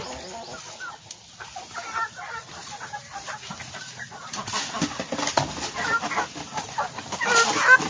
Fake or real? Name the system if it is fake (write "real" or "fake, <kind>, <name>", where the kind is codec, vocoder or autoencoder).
real